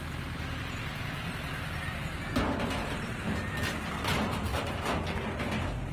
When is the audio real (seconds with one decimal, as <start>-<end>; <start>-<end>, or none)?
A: 0.0-5.9